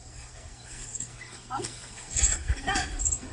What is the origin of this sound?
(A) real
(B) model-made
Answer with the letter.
B